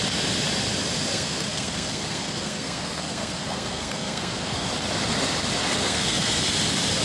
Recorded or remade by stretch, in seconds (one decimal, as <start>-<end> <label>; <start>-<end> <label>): 0.0-1.1 recorded; 1.1-4.7 remade; 4.7-5.6 recorded; 5.6-6.4 remade; 6.4-7.0 recorded